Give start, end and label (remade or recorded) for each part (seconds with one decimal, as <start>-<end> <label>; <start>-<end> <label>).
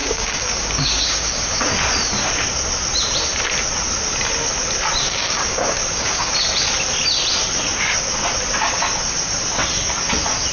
0.0-1.6 remade; 1.6-5.0 recorded; 5.0-6.3 remade; 6.3-10.5 recorded